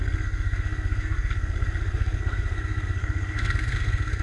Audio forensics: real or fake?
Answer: fake